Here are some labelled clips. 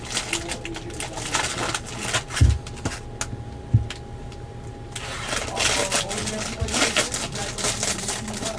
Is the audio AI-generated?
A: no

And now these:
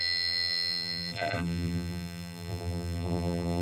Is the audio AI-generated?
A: yes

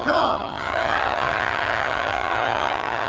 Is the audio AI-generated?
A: yes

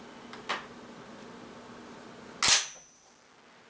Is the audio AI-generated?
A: no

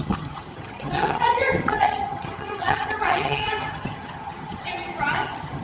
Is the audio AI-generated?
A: yes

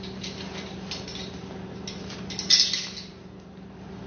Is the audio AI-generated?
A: no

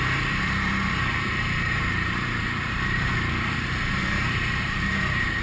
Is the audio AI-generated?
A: yes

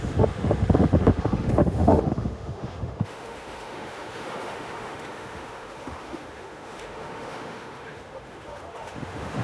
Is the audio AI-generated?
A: yes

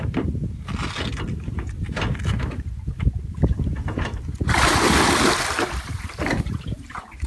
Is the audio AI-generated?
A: no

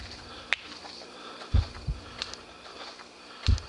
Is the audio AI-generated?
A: no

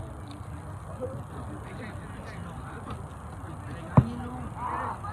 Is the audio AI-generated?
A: no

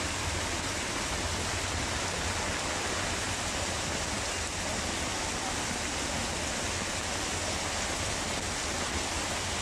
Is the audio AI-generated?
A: no